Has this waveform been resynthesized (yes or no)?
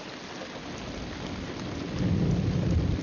no